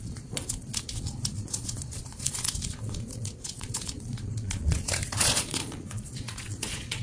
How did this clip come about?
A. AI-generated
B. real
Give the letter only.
A